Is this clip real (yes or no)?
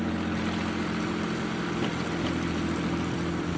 yes